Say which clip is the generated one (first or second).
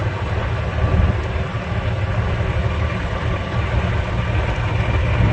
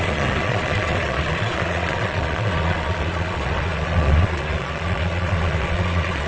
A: second